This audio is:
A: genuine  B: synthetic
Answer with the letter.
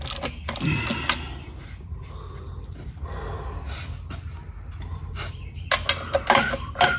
A